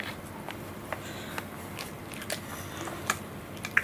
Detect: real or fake real